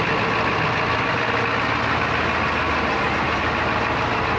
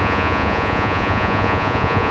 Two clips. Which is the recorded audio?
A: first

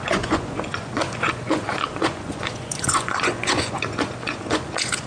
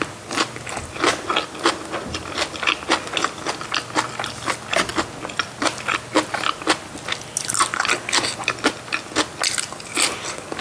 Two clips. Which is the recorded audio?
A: second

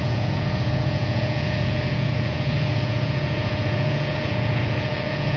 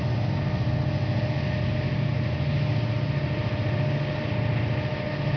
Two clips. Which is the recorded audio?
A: second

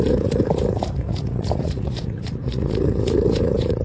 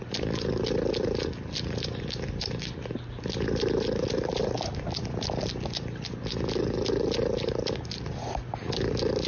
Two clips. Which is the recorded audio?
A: second